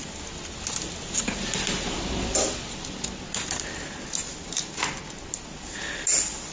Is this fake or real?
real